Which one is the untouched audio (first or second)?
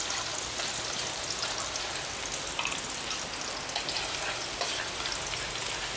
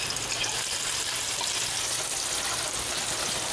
first